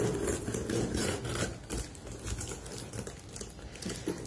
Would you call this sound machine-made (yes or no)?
no